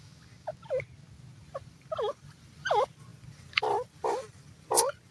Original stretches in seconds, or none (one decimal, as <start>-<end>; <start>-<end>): 0.5-1.7